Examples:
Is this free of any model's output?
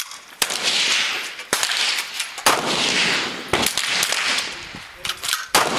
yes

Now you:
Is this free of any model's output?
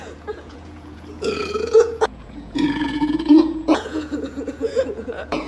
no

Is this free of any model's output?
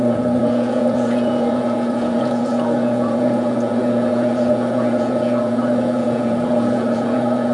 no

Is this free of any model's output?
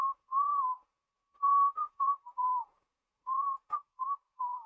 no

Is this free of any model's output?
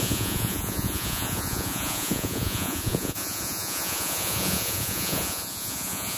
no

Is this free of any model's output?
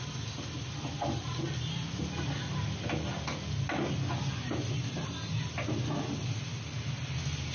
yes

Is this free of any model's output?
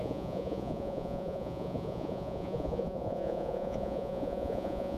no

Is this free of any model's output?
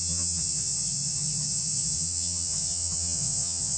no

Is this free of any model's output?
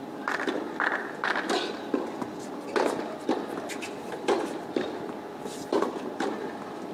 yes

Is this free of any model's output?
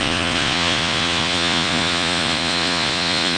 no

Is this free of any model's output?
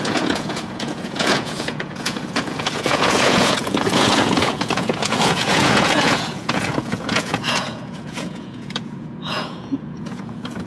no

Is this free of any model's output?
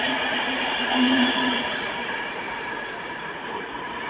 no